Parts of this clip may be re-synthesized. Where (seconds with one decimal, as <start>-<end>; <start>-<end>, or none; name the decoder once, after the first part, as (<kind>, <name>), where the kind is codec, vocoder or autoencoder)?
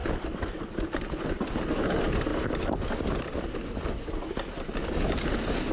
0.0-1.9 (vocoder, BigVGAN v2)